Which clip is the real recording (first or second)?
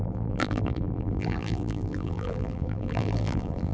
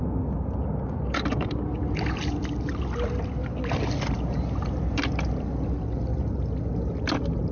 second